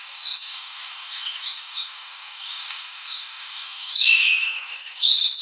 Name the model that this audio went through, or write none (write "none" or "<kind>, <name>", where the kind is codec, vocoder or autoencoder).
codec, DAC